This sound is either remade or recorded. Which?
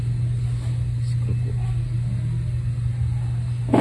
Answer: recorded